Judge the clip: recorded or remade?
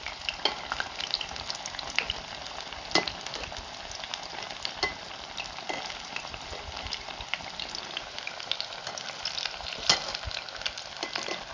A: recorded